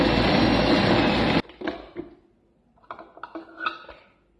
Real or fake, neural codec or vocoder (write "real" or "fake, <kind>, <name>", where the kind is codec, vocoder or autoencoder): real